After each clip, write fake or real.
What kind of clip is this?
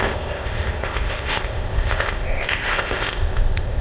fake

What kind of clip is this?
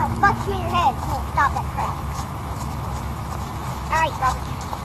fake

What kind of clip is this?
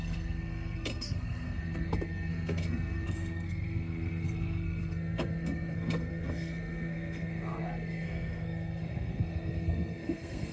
fake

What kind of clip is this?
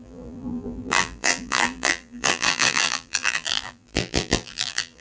fake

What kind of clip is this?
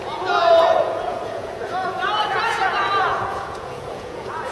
fake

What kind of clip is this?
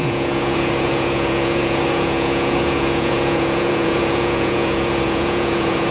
fake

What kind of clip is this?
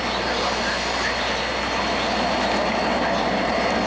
real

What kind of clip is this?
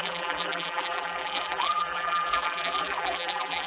fake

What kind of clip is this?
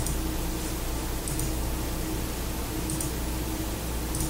real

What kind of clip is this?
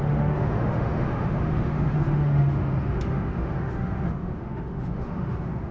fake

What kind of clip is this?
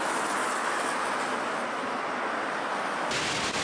real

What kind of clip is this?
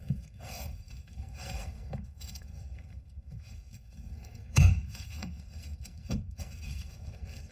fake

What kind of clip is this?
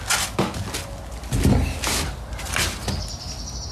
real